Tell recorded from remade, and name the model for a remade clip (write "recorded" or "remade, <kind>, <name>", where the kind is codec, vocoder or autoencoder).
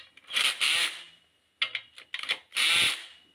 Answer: recorded